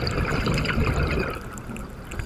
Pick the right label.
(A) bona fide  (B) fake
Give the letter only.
A